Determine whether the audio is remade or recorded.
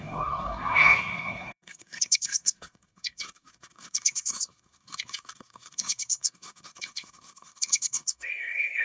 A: remade